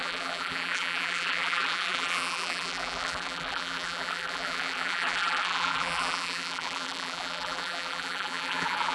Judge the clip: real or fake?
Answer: fake